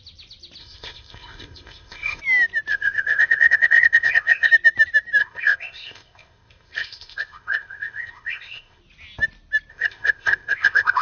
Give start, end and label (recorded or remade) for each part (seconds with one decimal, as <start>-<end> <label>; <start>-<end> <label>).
0.0-0.6 recorded; 0.6-2.2 remade; 2.2-2.7 recorded; 2.7-4.5 remade; 4.5-5.2 recorded; 5.2-8.8 remade; 8.8-9.7 recorded; 9.7-11.0 remade